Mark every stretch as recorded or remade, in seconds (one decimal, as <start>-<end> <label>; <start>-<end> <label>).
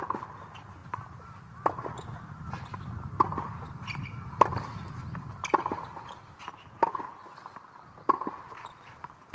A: 0.0-9.3 recorded